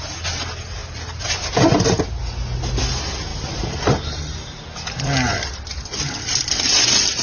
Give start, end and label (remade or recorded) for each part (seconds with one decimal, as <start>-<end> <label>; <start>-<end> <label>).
0.0-0.8 recorded; 0.8-1.5 remade; 1.5-3.3 recorded; 3.3-6.6 remade; 6.6-7.2 recorded